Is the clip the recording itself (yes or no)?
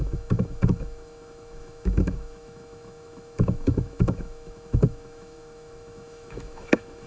no